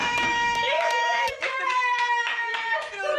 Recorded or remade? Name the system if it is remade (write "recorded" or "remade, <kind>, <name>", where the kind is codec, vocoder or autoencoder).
remade, autoencoder, DAC-VAE